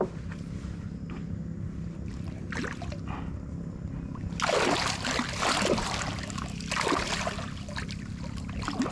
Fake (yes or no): no